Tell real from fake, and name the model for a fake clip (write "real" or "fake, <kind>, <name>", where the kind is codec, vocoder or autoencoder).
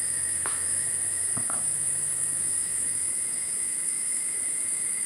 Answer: fake, autoencoder, DAC-VAE